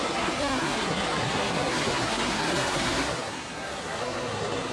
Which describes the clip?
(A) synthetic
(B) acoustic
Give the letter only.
A